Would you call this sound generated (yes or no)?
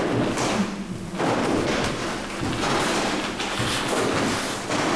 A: no